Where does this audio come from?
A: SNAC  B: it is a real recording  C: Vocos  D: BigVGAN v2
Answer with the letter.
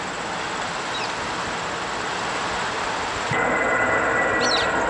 B